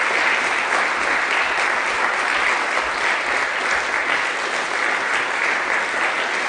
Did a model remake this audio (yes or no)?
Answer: no